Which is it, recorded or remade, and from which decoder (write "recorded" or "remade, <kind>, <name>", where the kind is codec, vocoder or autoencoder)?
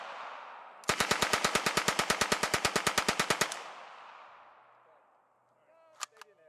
recorded